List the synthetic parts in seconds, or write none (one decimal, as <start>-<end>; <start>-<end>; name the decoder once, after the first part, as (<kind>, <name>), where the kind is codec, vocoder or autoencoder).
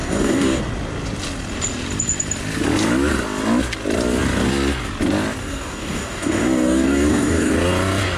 0.0-0.6 (codec, DAC); 5.4-7.5